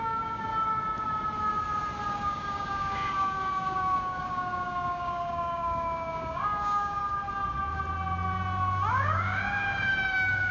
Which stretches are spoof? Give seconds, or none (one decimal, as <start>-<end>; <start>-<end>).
0.0-0.5; 2.1-7.0; 8.9-10.5